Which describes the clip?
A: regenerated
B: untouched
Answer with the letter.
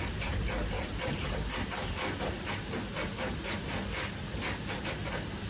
B